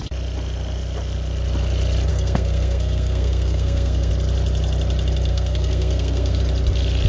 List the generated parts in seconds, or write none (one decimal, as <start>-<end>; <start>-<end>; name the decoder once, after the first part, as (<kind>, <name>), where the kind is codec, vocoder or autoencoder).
2.1-4.1 (codec, SNAC); 5.3-6.4